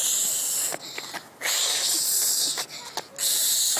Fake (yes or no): no